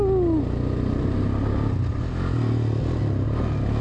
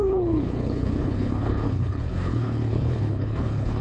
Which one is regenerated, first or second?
second